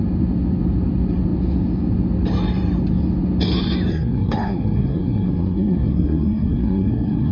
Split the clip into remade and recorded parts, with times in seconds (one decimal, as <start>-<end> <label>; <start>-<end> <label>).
0.0-3.9 recorded; 3.9-7.3 remade

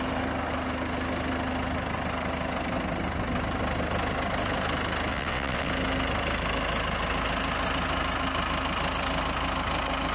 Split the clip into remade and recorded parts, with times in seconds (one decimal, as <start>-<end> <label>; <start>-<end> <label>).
0.0-5.1 recorded; 5.1-5.7 remade; 5.7-10.1 recorded

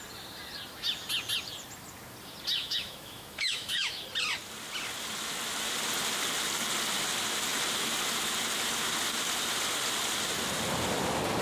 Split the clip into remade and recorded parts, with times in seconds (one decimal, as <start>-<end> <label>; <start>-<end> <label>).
0.0-2.6 recorded; 2.6-4.0 remade; 4.0-11.4 recorded

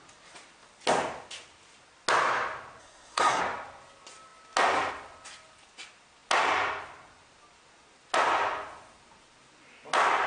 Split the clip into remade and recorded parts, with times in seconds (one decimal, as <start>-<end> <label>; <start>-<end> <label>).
0.0-2.8 recorded; 2.8-3.4 remade; 3.4-10.3 recorded

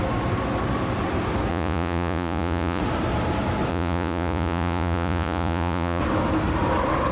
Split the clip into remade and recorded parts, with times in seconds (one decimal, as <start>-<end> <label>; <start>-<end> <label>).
0.0-1.5 recorded; 1.5-2.8 remade; 2.8-3.7 recorded; 3.7-6.0 remade; 6.0-7.1 recorded

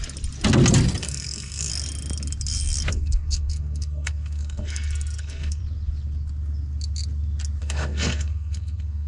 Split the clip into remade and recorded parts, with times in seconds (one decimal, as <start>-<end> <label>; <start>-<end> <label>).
0.0-1.0 recorded; 1.0-1.7 remade; 1.7-2.9 recorded; 2.9-5.6 remade; 5.6-7.6 recorded; 7.6-9.1 remade

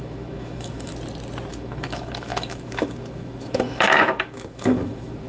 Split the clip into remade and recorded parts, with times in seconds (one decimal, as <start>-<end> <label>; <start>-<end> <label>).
0.0-0.9 remade; 0.9-1.5 recorded; 1.5-5.3 remade

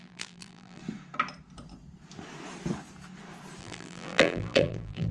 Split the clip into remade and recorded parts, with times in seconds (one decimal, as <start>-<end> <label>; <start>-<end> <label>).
0.0-0.8 remade; 0.8-3.6 recorded; 3.6-5.1 remade